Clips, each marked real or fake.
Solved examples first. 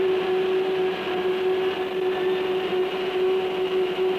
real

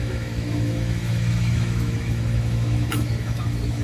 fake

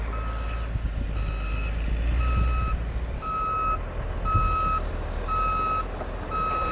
real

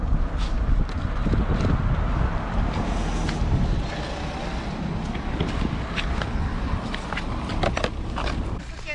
real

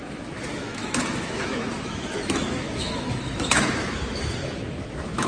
fake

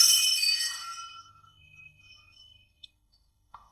fake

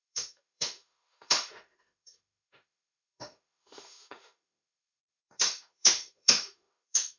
fake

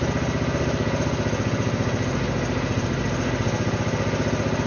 real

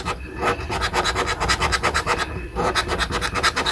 real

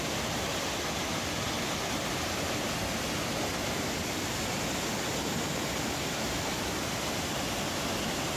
real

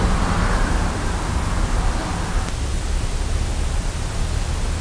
real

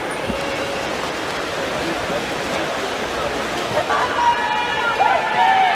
real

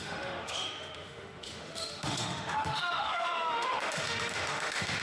fake